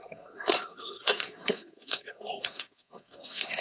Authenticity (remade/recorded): remade